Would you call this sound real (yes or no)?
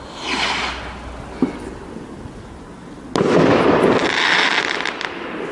yes